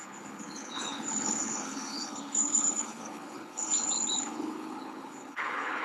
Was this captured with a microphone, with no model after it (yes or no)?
no